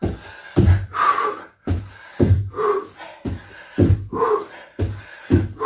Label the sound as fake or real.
real